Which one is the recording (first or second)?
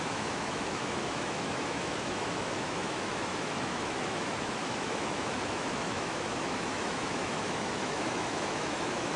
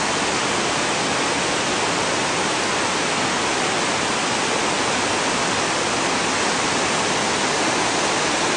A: second